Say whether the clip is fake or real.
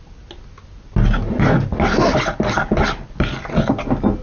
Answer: real